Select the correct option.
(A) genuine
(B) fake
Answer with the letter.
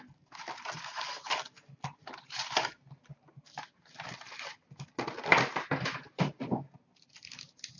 A